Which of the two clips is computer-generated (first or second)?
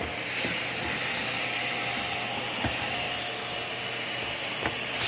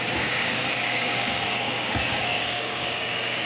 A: second